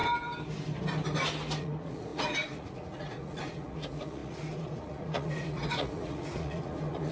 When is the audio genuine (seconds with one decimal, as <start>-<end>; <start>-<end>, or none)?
0.0-1.6